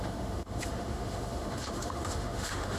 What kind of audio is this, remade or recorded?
remade